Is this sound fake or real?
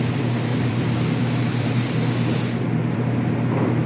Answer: fake